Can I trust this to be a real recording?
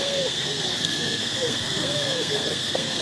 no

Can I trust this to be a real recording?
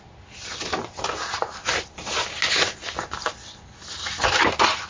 yes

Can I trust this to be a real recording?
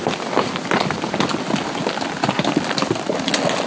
yes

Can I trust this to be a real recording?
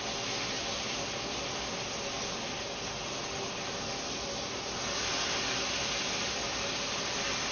yes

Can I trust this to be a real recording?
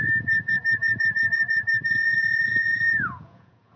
no